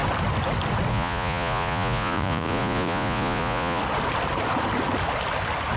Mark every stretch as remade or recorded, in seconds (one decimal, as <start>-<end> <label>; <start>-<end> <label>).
0.0-0.9 recorded; 0.9-3.8 remade; 3.8-5.8 recorded